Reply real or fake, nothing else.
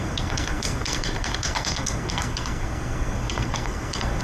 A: fake